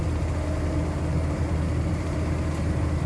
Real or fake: real